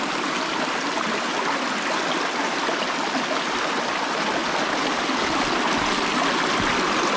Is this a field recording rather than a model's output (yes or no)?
yes